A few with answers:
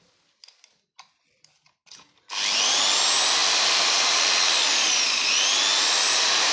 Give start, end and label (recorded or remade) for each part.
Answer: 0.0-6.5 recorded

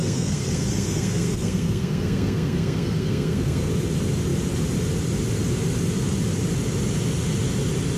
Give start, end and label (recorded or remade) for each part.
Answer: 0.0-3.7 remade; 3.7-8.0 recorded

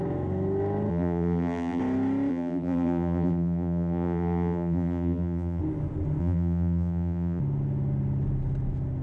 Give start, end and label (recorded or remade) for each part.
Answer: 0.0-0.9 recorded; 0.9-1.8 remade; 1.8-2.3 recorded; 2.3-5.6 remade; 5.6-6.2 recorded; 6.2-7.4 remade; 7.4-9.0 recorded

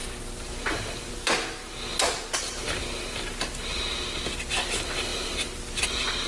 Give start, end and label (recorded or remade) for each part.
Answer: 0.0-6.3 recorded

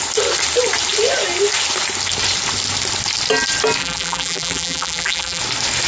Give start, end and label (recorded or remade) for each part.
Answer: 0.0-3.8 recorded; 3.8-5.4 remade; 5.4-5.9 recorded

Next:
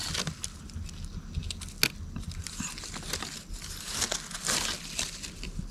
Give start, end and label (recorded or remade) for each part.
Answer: 0.0-5.7 recorded